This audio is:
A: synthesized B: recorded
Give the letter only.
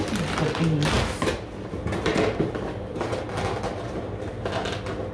B